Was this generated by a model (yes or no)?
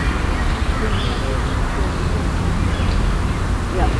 no